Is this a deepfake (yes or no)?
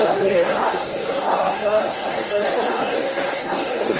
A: yes